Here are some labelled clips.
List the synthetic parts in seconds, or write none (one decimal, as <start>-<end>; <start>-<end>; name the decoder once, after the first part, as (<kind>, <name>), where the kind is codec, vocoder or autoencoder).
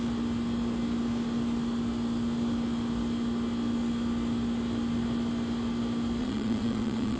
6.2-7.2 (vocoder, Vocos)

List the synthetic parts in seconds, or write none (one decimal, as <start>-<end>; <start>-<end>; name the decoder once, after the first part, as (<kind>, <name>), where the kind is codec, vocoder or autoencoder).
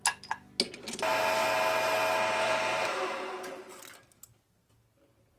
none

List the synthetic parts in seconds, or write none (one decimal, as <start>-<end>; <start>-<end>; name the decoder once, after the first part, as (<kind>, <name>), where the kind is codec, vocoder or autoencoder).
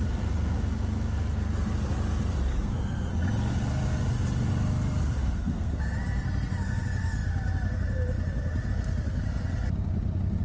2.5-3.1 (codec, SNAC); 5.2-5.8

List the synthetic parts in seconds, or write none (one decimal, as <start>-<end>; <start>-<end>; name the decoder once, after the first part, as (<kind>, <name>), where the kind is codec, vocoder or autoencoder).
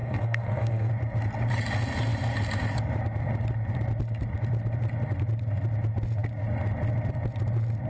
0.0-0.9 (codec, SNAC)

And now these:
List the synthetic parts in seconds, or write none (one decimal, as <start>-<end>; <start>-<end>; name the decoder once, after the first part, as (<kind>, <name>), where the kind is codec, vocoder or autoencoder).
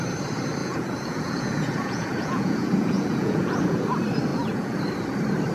0.6-3.9 (vocoder, Vocos); 4.3-4.8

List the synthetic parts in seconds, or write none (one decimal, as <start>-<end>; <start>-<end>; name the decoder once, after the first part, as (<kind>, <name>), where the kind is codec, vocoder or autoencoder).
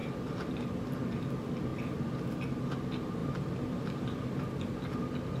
3.2-4.4 (vocoder, BigVGAN v2)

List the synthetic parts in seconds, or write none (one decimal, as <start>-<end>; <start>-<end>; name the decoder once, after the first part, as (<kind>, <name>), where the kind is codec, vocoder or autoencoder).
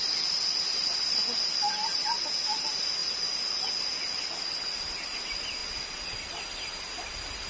none